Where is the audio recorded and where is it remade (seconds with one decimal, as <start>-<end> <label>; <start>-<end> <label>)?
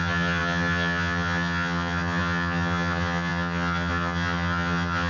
0.0-5.1 remade